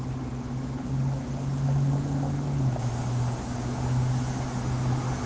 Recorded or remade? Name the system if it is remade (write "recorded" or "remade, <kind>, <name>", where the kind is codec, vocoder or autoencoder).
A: recorded